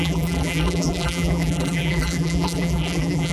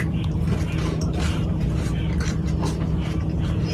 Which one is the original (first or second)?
second